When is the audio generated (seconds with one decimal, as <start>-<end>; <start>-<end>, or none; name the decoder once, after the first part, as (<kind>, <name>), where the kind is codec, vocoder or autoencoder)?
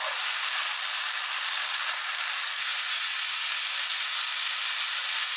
none